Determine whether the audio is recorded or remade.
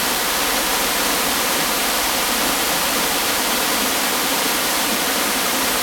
remade